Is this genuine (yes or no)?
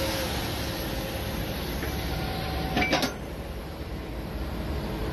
yes